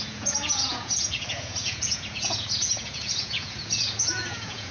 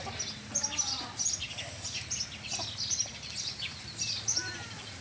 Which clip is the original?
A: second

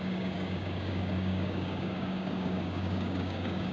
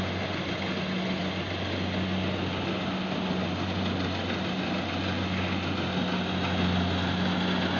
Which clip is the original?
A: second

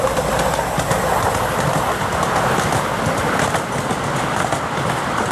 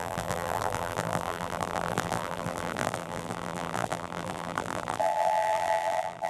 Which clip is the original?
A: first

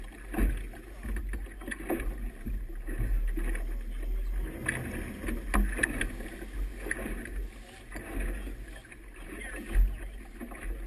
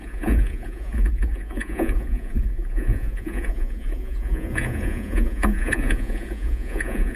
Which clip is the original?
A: first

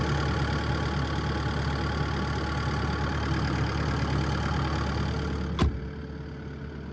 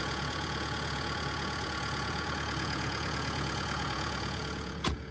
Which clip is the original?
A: first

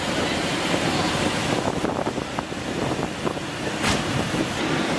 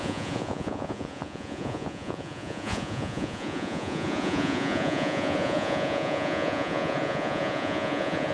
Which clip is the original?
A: first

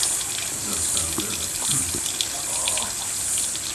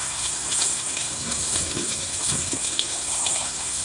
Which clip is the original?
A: first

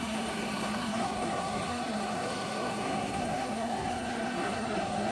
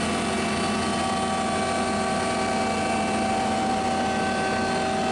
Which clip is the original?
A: second